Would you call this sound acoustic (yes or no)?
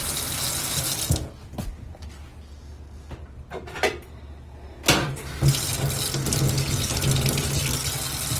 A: yes